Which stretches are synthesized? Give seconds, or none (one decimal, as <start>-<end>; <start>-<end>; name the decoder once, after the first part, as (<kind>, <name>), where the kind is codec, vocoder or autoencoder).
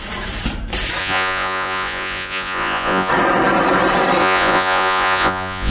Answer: 1.0-3.1 (vocoder, Vocos); 4.2-5.7